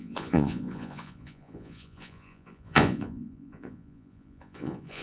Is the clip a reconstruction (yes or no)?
yes